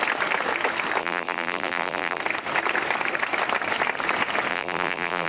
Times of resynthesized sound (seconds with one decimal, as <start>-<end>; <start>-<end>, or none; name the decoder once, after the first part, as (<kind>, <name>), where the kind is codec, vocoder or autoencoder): 1.0-2.2 (vocoder, BigVGAN v2); 4.5-5.3